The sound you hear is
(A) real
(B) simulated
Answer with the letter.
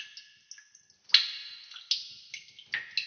A